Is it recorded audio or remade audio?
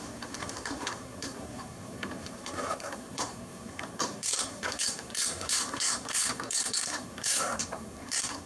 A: remade